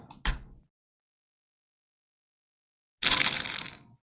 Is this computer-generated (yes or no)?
no